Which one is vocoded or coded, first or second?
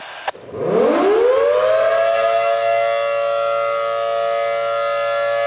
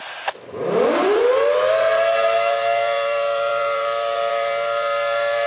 second